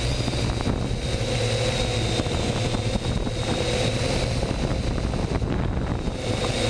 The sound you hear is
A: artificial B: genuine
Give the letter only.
B